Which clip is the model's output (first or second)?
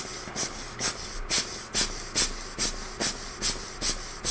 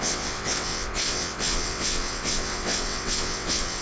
second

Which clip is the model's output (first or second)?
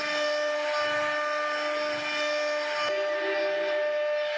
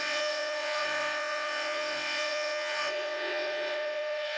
second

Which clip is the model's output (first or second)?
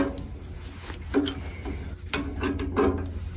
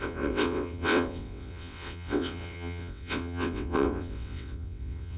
second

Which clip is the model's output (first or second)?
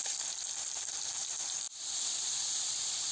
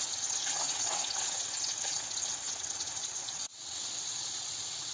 second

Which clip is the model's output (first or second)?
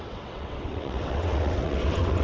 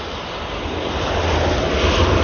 first